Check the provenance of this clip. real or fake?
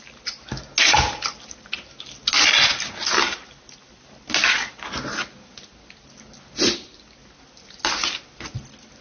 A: real